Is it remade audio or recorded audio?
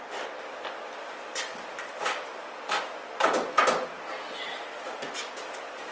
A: recorded